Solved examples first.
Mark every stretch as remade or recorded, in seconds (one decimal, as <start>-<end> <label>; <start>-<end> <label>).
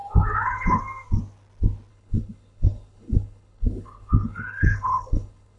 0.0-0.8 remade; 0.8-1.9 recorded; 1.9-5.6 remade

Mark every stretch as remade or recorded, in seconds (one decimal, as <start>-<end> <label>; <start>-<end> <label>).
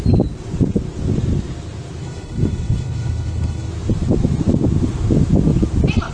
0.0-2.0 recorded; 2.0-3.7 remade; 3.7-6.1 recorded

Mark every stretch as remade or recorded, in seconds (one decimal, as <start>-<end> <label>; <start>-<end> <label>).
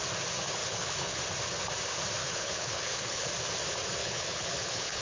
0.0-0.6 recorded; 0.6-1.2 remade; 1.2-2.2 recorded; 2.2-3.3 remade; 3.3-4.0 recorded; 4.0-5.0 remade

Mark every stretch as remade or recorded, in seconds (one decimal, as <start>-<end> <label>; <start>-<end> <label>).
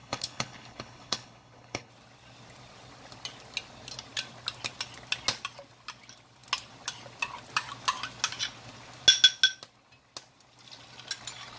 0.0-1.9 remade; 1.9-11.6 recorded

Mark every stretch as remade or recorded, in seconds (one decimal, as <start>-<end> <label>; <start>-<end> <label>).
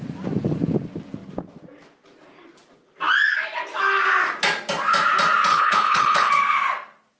0.0-5.5 recorded; 5.5-6.3 remade; 6.3-7.2 recorded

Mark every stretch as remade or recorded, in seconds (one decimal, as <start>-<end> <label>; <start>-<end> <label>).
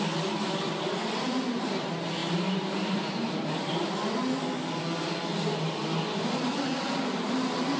0.0-7.8 recorded